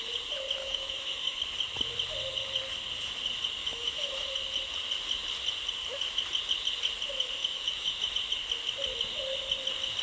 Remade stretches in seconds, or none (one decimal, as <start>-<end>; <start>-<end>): 0.6-1.4; 3.6-4.3; 7.4-8.1